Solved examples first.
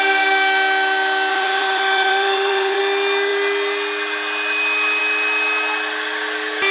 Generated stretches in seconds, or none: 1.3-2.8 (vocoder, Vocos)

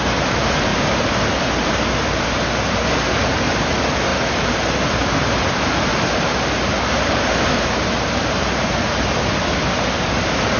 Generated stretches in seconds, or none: 0.0-0.7 (vocoder, BigVGAN v2); 1.5-5.9; 6.7-10.6

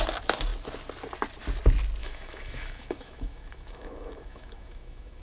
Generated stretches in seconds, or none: 2.0-5.2 (autoencoder, DAC-VAE)

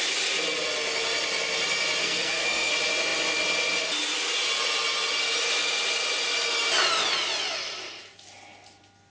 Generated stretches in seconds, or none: 2.0-2.7 (codec, SNAC)

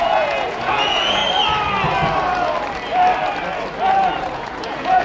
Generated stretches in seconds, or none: 0.0-1.2 (vocoder, Vocos); 4.2-5.0

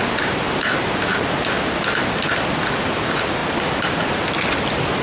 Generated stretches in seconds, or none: none

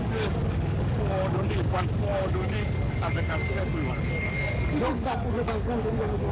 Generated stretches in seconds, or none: 0.0-6.3 (codec, DAC)

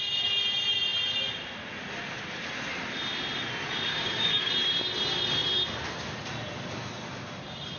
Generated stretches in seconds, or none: 3.9-4.5 (codec, DAC)